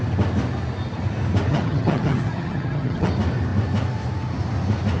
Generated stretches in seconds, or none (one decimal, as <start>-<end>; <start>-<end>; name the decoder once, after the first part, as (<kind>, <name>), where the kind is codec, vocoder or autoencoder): 1.5-3.1 (vocoder, HiFi-GAN)